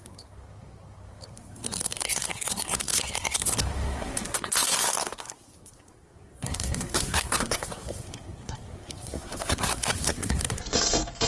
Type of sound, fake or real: fake